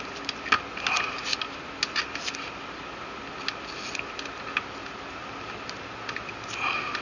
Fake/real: real